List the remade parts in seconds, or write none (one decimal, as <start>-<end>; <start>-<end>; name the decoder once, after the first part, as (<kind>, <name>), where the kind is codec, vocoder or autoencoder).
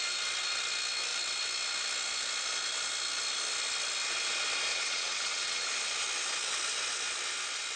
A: 4.7-5.7 (vocoder, WaveNeXt)